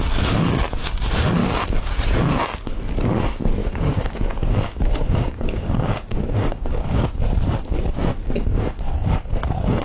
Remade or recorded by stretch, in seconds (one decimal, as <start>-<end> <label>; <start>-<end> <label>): 0.0-1.4 recorded; 1.4-1.9 remade; 1.9-3.6 recorded; 3.6-7.2 remade; 7.2-8.1 recorded; 8.1-8.8 remade; 8.8-9.8 recorded